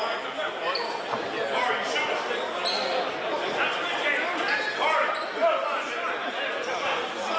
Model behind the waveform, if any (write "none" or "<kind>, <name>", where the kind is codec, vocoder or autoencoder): none